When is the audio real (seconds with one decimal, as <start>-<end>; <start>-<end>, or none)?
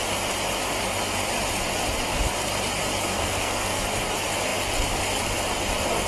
0.0-3.1; 3.8-6.1